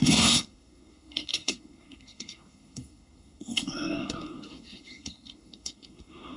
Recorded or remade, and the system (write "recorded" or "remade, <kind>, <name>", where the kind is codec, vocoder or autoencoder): remade, codec, SNAC